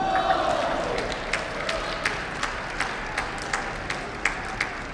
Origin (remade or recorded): recorded